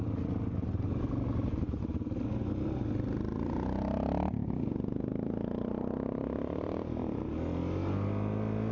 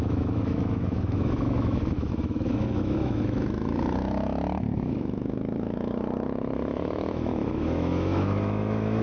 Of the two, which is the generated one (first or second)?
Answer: second